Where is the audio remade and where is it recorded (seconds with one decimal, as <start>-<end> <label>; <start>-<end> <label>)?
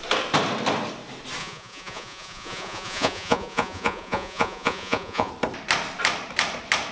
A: 0.0-1.4 recorded; 1.4-5.3 remade; 5.3-6.9 recorded